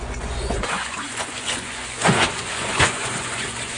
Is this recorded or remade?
remade